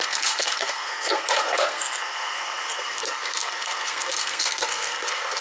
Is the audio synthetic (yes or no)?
yes